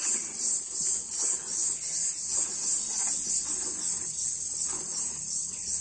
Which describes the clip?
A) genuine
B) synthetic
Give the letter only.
A